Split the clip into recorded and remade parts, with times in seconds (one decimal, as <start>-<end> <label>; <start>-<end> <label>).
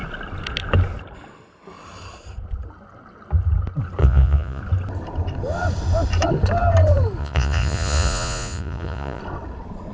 0.0-4.0 recorded; 4.0-4.6 remade; 4.6-7.2 recorded; 7.2-9.2 remade; 9.2-9.9 recorded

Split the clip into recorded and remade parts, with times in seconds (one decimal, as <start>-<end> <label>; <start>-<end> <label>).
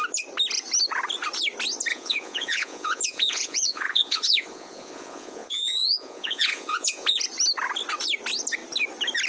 0.0-1.9 recorded; 1.9-7.2 remade; 7.2-9.3 recorded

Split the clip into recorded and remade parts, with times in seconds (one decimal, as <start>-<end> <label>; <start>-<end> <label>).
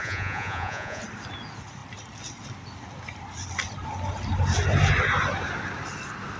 0.0-1.0 remade; 1.0-6.4 recorded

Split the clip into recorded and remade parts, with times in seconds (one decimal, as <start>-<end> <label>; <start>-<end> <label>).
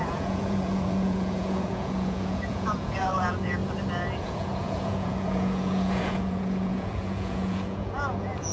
0.0-3.6 remade; 3.6-4.2 recorded; 4.2-8.5 remade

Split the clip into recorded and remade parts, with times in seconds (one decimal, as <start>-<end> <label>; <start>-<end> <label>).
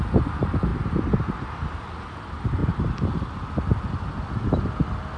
0.0-5.2 recorded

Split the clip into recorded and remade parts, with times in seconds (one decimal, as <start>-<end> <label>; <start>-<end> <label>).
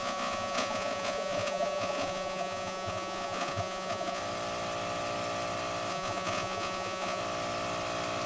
0.0-4.2 remade; 4.2-5.9 recorded; 5.9-7.2 remade; 7.2-8.3 recorded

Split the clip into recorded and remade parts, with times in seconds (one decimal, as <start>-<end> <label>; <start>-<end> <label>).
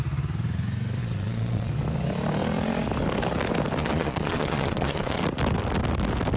0.0-1.0 recorded; 1.0-1.7 remade; 1.7-3.8 recorded; 3.8-5.2 remade; 5.2-6.4 recorded